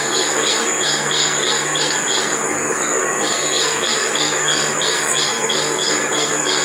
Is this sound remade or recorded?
remade